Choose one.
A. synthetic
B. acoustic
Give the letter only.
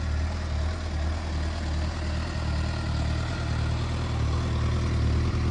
B